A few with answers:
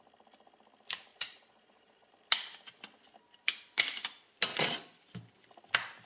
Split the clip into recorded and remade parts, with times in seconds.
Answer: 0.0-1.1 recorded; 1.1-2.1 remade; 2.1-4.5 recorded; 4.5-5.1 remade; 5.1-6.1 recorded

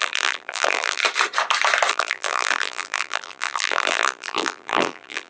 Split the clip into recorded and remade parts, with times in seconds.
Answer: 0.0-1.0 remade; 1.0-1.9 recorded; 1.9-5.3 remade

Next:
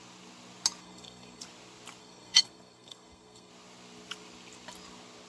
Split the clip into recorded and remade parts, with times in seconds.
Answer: 0.0-0.8 recorded; 0.8-1.4 remade; 1.4-2.0 recorded; 2.0-3.5 remade; 3.5-5.3 recorded

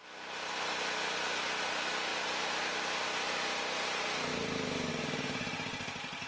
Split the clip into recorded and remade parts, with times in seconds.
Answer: 0.0-4.3 recorded; 4.3-4.9 remade; 4.9-6.3 recorded

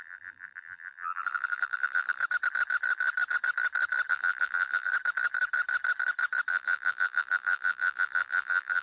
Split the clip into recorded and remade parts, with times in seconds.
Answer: 0.0-2.2 remade; 2.2-4.1 recorded; 4.1-4.9 remade; 4.9-6.5 recorded; 6.5-8.8 remade